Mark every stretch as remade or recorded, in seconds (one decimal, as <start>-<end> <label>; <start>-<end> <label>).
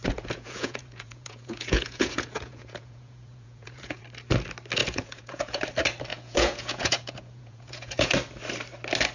0.0-4.0 remade; 4.0-4.8 recorded; 4.8-5.6 remade; 5.6-6.1 recorded; 6.1-8.1 remade; 8.1-9.1 recorded